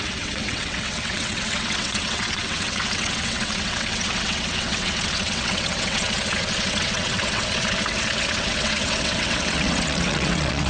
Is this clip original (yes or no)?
no